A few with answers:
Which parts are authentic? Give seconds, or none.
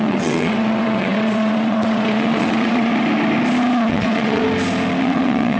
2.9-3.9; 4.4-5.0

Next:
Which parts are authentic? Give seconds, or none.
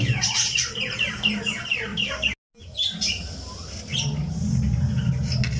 1.9-5.6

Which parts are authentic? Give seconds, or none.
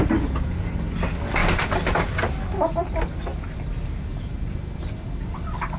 0.0-5.8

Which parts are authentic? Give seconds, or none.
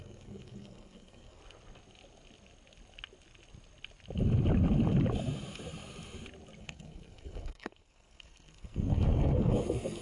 1.4-6.6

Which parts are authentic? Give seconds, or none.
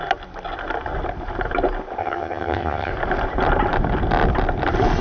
0.0-2.0; 2.9-5.0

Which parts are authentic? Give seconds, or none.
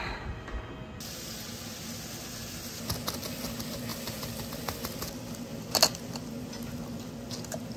0.0-3.9; 4.5-5.5; 6.1-7.8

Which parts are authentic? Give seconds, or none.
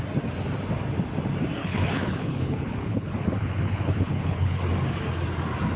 0.0-1.6; 4.6-5.8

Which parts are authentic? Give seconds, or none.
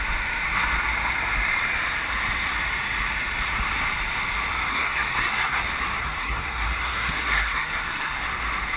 0.0-4.7; 5.6-6.0; 8.2-8.8